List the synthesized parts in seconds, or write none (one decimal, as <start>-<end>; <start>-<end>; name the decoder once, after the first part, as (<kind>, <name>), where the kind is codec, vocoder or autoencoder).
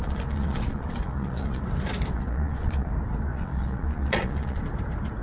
0.0-1.6 (vocoder, Vocos); 2.1-2.9; 3.3-4.6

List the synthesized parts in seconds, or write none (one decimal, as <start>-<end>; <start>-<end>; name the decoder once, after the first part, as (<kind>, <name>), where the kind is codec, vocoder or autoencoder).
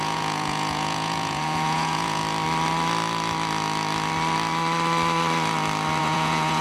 0.0-2.2 (vocoder, Vocos); 6.0-6.6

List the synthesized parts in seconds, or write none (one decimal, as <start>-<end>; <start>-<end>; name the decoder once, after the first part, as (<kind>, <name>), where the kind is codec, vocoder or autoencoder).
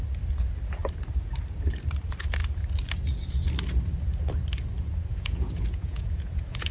5.1-6.7 (vocoder, Vocos)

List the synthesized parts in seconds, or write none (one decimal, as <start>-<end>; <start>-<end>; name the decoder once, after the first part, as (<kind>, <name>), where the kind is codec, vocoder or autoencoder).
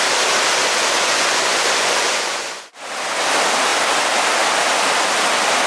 0.6-2.8 (vocoder, Vocos)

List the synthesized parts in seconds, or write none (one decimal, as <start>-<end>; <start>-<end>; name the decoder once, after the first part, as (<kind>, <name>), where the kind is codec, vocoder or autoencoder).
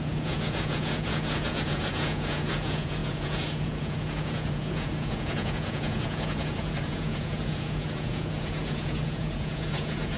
0.0-10.2 (vocoder, Vocos)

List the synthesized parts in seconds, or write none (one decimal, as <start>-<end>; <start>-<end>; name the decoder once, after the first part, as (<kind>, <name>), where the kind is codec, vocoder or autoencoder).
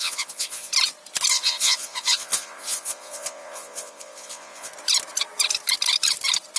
0.0-0.7 (vocoder, Vocos); 1.3-4.7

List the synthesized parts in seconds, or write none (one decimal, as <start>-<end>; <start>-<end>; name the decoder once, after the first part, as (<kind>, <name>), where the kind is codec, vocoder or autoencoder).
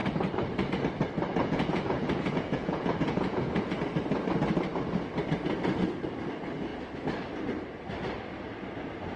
1.3-3.8 (vocoder, Vocos)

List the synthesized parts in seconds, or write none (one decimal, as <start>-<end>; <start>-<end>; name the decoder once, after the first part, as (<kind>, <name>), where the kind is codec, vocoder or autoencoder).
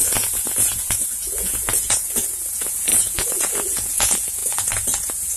0.0-5.4 (vocoder, Vocos)